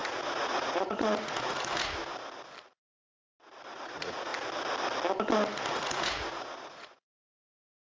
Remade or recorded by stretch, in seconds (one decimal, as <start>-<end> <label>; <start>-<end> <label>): 0.0-2.0 remade; 2.0-3.7 recorded; 3.7-4.3 remade; 4.3-5.7 recorded; 5.7-8.0 remade